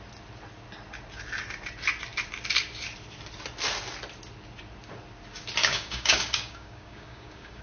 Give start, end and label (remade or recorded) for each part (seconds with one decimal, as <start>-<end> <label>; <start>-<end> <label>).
0.0-5.6 recorded; 5.6-7.6 remade